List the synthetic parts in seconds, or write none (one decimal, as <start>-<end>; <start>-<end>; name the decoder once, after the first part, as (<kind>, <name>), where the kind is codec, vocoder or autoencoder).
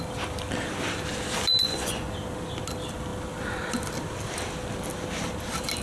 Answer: 1.6-2.1 (vocoder, Vocos)